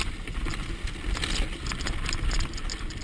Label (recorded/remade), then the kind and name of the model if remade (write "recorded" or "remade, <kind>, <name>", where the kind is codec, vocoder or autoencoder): recorded